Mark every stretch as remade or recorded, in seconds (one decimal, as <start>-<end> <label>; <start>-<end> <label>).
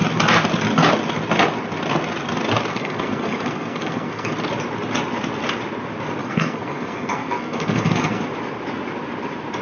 0.0-2.7 recorded; 2.7-4.3 remade; 4.3-6.2 recorded; 6.2-8.2 remade; 8.2-9.6 recorded